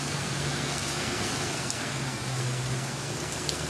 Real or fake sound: fake